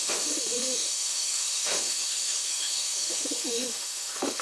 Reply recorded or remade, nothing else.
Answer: remade